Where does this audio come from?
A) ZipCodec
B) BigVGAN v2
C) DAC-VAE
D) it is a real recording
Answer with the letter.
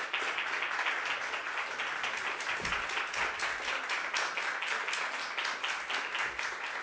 D